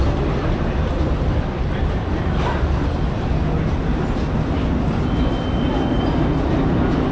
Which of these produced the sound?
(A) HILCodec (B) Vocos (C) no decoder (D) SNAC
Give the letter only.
C